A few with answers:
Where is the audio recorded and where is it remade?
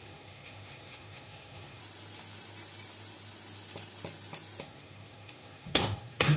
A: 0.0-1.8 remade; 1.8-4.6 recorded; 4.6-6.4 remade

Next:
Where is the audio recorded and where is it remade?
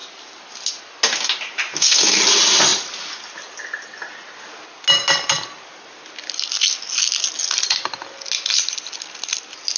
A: 0.0-1.7 recorded; 1.7-2.2 remade; 2.2-9.8 recorded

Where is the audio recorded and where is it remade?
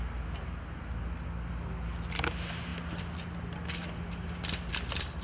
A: 0.0-5.2 recorded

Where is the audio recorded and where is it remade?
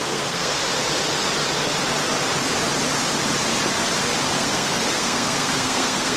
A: 0.0-0.6 remade; 0.6-4.3 recorded; 4.3-6.2 remade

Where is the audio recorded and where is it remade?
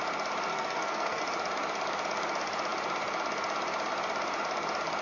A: 0.0-0.5 recorded; 0.5-1.2 remade; 1.2-5.0 recorded